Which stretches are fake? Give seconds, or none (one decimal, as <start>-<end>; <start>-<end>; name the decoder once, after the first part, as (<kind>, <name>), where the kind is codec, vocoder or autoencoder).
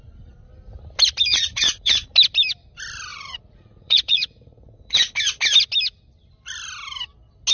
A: 1.3-2.1 (vocoder, Vocos); 3.1-5.0